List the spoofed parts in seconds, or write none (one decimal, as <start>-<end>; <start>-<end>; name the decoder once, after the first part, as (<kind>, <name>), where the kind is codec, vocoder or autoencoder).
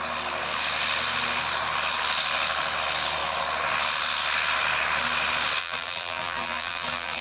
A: 5.6-7.2 (vocoder, BigVGAN v2)